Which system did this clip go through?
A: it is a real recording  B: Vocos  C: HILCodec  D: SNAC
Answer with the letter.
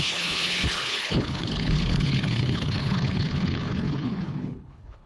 C